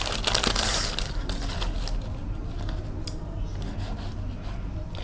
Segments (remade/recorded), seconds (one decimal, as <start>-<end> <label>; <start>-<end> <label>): 0.0-0.7 recorded; 0.7-1.4 remade; 1.4-5.0 recorded